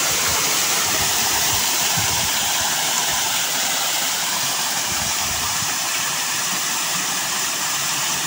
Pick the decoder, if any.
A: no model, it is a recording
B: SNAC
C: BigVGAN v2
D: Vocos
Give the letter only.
C